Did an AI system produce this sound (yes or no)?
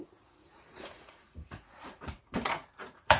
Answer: yes